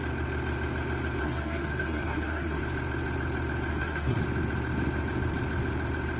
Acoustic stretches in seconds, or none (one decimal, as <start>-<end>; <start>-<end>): 0.0-1.2; 2.6-3.7; 4.2-6.2